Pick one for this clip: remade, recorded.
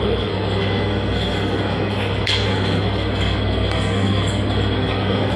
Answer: remade